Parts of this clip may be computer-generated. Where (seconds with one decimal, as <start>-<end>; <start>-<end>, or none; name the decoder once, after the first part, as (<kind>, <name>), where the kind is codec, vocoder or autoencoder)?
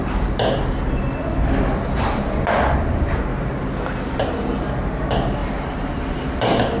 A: 3.3-4.1 (vocoder, BigVGAN v2); 5.4-6.0